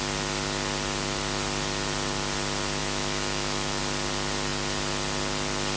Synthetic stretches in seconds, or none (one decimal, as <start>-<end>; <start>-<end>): 2.8-3.8